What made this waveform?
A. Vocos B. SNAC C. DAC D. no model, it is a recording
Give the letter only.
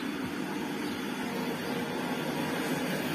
D